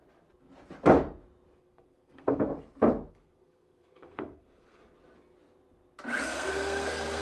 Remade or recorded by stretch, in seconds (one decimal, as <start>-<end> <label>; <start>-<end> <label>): 0.0-1.6 recorded; 1.6-2.5 remade; 2.5-3.1 recorded; 3.1-4.8 remade; 4.8-6.2 recorded; 6.2-7.2 remade